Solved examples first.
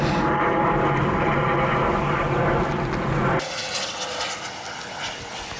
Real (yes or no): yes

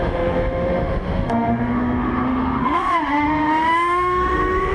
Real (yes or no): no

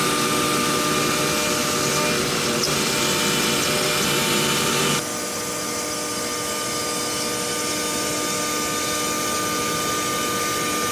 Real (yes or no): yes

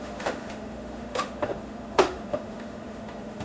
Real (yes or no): no